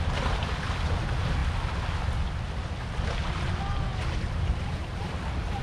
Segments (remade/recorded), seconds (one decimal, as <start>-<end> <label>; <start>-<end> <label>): 0.0-3.9 recorded; 3.9-5.1 remade; 5.1-5.6 recorded